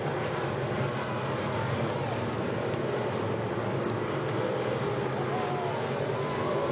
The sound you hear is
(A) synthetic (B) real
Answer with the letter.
B